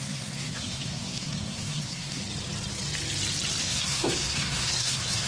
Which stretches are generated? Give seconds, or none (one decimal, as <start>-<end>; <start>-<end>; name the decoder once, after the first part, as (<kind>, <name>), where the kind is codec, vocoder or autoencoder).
0.0-2.2 (codec, SNAC); 3.6-5.3